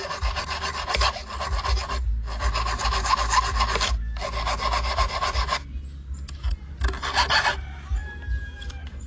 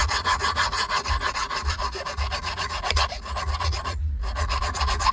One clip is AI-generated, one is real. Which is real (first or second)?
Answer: first